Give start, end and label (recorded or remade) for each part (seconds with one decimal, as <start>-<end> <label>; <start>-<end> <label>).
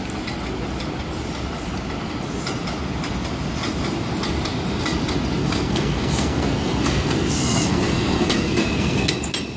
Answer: 0.0-5.4 recorded; 5.4-9.1 remade; 9.1-9.6 recorded